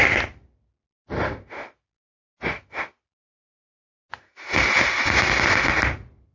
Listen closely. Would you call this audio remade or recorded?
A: recorded